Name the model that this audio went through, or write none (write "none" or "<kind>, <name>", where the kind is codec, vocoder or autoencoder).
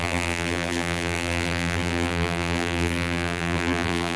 vocoder, BigVGAN v2